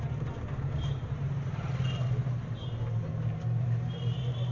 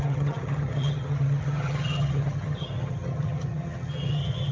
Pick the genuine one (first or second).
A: first